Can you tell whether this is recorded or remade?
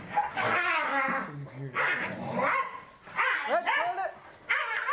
recorded